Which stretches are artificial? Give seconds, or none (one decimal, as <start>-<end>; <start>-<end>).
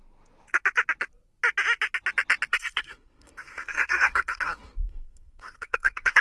2.5-6.2